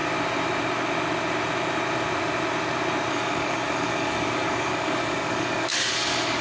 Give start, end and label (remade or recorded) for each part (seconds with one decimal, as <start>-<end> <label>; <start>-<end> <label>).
0.0-3.1 recorded; 3.1-6.4 remade